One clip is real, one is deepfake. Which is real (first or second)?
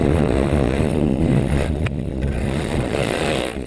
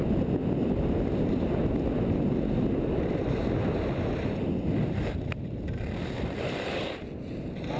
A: second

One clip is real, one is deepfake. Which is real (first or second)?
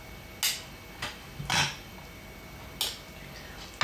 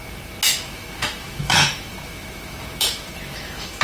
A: first